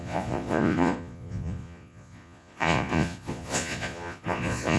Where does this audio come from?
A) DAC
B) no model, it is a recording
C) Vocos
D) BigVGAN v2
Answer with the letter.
C